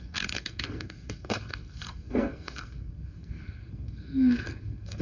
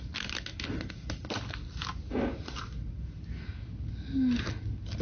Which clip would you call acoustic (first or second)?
second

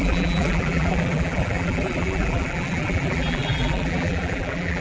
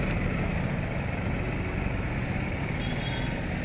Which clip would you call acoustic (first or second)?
second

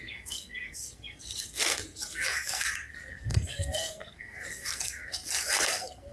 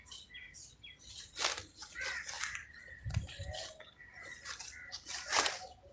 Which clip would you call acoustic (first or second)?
second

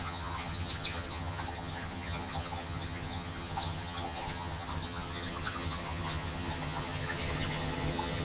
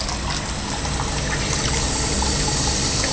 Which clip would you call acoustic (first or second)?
second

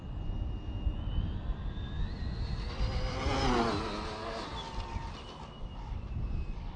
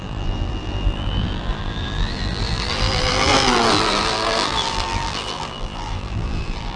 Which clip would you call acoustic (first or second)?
first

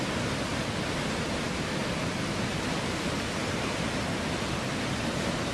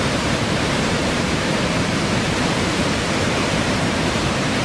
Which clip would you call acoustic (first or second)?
first